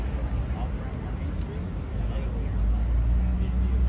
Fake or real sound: real